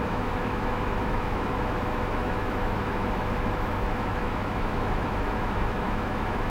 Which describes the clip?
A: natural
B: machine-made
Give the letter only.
B